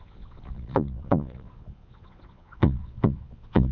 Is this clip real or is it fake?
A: fake